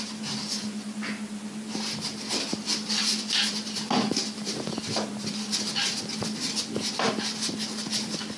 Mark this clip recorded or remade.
recorded